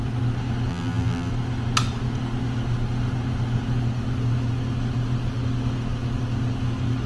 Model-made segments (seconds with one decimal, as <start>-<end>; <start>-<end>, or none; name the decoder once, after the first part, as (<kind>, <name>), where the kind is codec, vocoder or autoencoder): 0.7-1.3 (vocoder, BigVGAN v2)